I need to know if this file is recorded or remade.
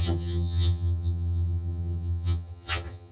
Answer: remade